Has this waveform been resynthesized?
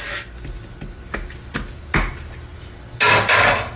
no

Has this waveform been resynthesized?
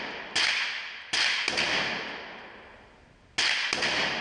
no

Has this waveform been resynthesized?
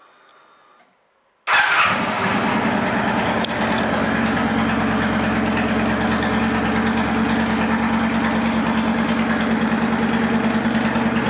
no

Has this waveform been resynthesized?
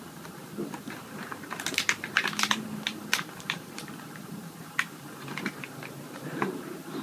yes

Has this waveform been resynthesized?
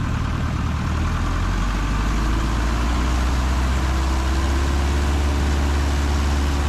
no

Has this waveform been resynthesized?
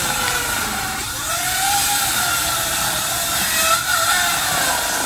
yes